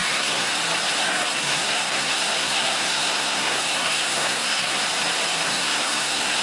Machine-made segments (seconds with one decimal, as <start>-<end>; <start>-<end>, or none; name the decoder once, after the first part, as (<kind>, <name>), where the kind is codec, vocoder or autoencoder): 0.0-0.5 (codec, SNAC); 1.0-4.8; 5.5-6.4